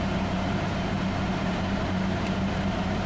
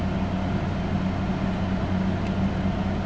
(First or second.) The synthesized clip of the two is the first